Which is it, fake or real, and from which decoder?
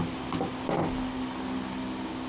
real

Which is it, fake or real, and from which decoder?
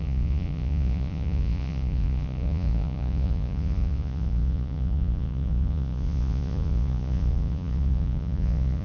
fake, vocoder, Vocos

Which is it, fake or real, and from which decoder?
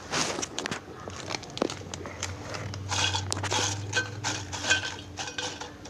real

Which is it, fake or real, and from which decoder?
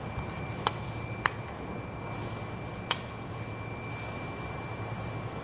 real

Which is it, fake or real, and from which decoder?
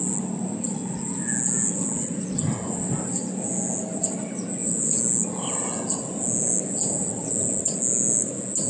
real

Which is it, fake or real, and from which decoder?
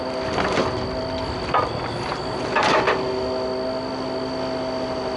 real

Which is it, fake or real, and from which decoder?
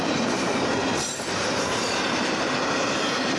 real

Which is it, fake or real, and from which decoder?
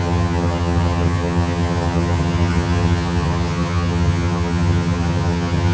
fake, vocoder, HiFi-GAN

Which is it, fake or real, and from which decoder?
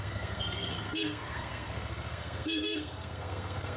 fake, codec, SNAC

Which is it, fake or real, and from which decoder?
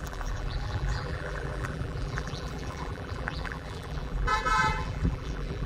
fake, vocoder, BigVGAN v2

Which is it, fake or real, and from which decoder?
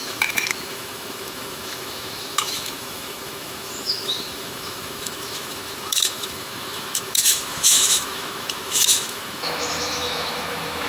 fake, autoencoder, DAC-VAE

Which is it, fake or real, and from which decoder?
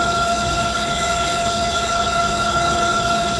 fake, codec, HILCodec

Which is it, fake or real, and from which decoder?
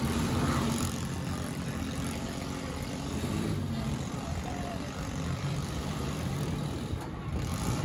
fake, vocoder, BigVGAN v2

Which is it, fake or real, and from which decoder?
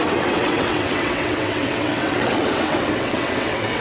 fake, vocoder, WaveNeXt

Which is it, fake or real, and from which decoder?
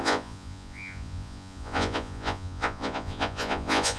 fake, vocoder, Vocos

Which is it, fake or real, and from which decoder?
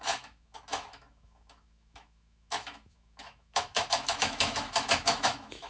fake, autoencoder, DAC-VAE